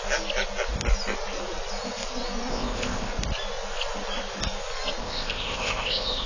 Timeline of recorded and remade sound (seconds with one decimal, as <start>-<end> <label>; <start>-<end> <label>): 0.0-2.5 recorded; 2.5-3.1 remade; 3.1-5.0 recorded; 5.0-6.3 remade